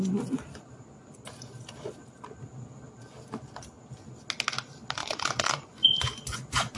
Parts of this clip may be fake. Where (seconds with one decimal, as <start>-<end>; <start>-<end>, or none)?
5.0-6.8

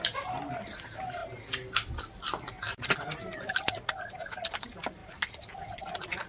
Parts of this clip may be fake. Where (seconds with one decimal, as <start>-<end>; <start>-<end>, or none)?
none

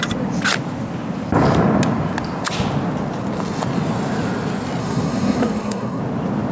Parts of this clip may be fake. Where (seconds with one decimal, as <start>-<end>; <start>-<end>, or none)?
4.8-6.0